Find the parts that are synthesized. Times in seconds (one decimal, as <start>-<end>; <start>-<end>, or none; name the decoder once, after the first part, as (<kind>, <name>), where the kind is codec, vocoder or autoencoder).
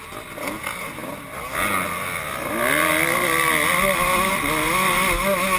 none